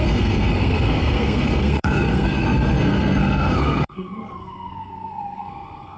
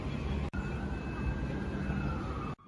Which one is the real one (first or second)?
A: second